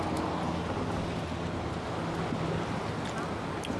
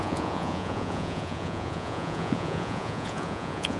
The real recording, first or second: first